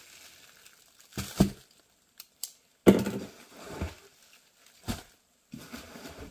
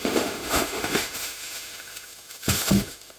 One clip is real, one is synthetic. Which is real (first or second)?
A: first